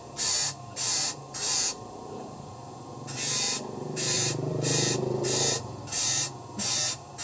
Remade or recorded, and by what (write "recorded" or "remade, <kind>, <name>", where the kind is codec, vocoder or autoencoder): remade, vocoder, BigVGAN v2